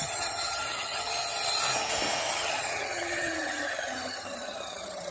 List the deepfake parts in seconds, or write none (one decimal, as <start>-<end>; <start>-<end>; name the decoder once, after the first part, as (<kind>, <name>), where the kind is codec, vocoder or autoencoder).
0.0-1.1 (vocoder, HiFi-GAN); 2.3-5.1